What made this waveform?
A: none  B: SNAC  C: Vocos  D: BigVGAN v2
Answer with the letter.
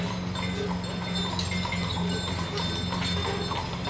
A